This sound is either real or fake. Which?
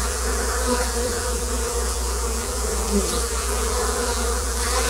fake